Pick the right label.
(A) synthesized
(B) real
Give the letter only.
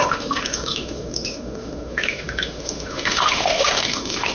A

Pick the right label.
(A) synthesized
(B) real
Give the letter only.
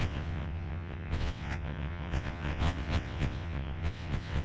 A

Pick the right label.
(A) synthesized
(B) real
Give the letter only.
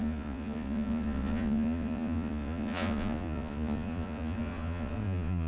A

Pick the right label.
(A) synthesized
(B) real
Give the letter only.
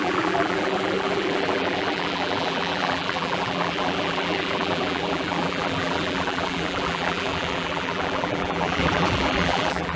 A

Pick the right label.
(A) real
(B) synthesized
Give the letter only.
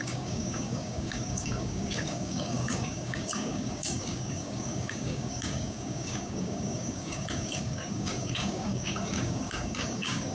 B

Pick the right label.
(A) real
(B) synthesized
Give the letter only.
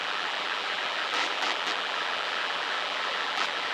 B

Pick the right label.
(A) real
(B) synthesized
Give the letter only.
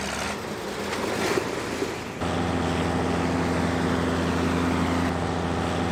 A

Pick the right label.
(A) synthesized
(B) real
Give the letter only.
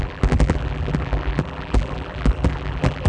A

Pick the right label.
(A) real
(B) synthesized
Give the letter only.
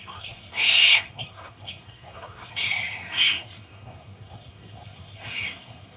B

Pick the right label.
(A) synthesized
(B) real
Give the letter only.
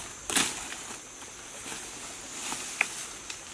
B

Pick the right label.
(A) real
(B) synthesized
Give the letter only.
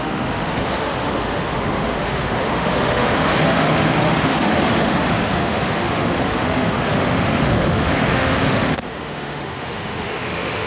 B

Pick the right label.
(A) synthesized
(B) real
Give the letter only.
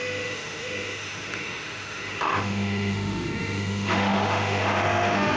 A